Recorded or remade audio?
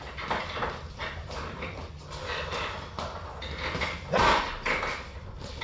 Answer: recorded